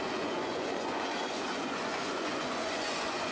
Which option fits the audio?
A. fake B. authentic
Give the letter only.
A